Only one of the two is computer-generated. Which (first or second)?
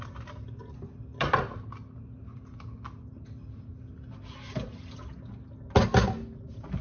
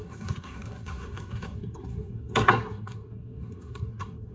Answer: second